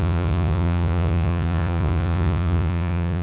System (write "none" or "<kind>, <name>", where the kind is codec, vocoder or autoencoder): vocoder, Vocos